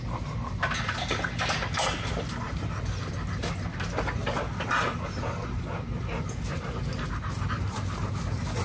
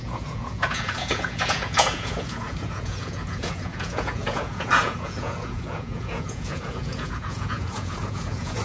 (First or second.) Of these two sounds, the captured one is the first